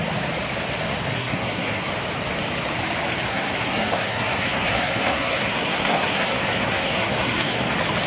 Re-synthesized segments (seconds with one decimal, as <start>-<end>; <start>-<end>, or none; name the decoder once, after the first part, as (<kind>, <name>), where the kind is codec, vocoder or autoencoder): 1.1-1.9 (codec, SNAC); 3.3-7.6